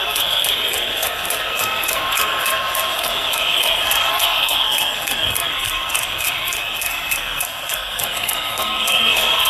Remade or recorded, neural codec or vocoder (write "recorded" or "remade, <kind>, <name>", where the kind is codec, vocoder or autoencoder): remade, codec, SNAC